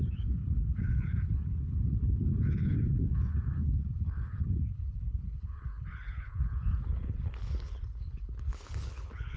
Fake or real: fake